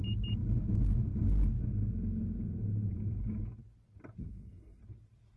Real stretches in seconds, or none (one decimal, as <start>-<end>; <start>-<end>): 0.0-4.2; 4.8-5.4